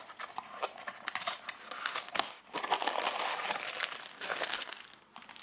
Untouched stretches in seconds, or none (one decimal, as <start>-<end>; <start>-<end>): 0.0-1.8; 2.4-4.1; 4.8-5.4